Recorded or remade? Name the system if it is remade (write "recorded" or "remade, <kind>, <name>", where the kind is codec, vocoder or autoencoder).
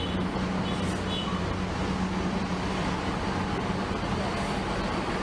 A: recorded